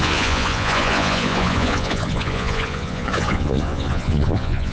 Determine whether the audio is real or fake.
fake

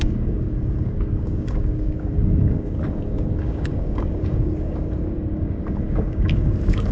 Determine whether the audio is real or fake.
fake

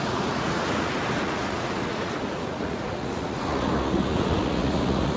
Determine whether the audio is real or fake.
fake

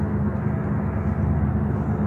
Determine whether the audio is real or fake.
real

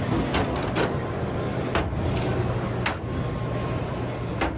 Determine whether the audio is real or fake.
real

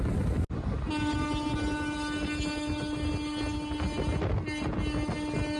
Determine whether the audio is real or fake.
real